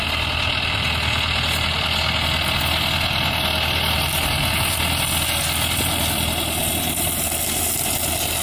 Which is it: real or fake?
real